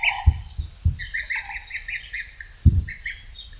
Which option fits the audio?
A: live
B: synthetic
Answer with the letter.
A